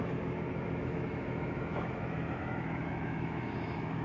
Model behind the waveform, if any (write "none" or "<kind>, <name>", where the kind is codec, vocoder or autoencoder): autoencoder, DAC-VAE